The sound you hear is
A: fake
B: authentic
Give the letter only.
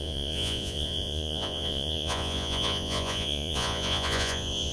A